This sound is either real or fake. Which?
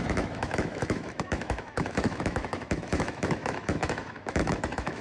fake